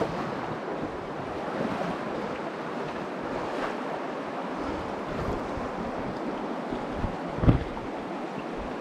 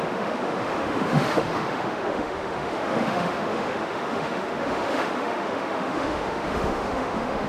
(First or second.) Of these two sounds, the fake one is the second